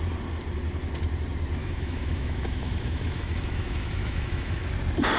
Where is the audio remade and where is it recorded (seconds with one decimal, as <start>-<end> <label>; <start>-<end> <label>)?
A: 0.0-1.6 recorded; 1.6-4.7 remade; 4.7-5.2 recorded